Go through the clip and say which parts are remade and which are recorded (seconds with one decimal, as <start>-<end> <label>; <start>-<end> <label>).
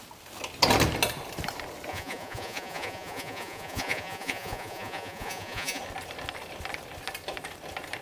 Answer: 0.0-1.9 recorded; 1.9-5.8 remade; 5.8-8.0 recorded